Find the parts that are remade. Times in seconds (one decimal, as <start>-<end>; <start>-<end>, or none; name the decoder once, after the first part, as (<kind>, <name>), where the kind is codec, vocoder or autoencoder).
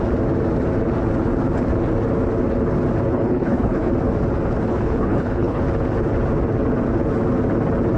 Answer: 3.1-3.9 (codec, HILCodec); 4.7-5.6